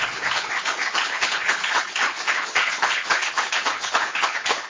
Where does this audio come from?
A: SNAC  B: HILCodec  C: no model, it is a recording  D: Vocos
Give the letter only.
B